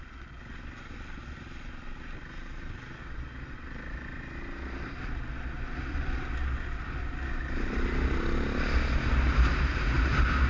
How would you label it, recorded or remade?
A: recorded